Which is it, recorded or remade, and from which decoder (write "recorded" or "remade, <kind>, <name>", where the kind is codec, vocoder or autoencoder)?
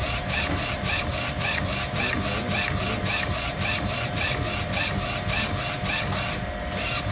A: recorded